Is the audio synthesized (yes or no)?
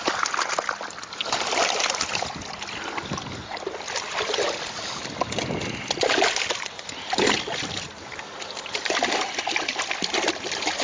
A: no